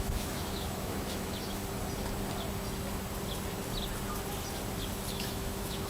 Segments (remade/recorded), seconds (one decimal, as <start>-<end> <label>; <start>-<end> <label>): 0.0-1.6 remade; 1.6-5.1 recorded; 5.1-5.9 remade